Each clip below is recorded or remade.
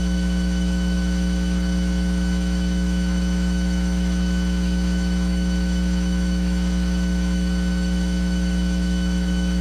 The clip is remade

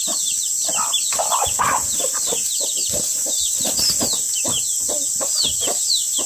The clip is recorded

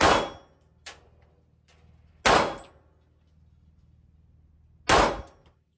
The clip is recorded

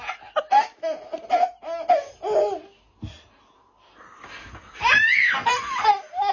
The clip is recorded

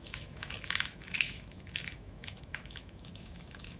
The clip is remade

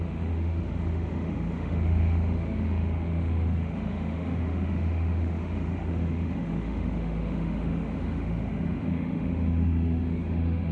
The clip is remade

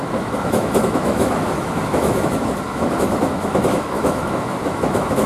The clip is remade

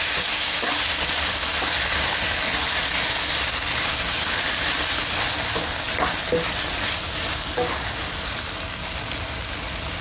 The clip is recorded